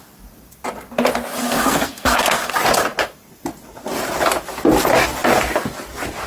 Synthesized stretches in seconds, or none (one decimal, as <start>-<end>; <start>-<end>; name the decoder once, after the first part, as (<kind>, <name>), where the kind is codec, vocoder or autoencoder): 1.4-2.5 (codec, SNAC)